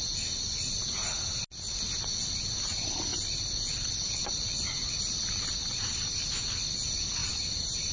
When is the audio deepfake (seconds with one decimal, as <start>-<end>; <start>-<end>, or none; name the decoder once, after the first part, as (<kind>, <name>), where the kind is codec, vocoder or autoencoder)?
7.2-7.9 (vocoder, BigVGAN v2)